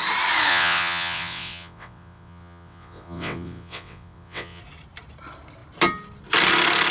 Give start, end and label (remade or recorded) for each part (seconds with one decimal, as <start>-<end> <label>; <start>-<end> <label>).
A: 0.0-0.5 recorded; 0.5-4.6 remade; 4.6-6.9 recorded